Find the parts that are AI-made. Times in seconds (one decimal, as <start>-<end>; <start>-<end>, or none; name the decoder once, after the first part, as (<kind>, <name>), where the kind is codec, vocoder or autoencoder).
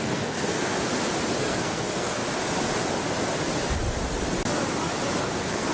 0.0-0.9 (codec, SNAC); 1.4-2.2; 5.2-5.7